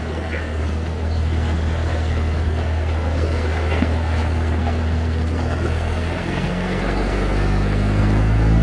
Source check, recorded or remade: remade